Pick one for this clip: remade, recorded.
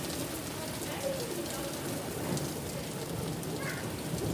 recorded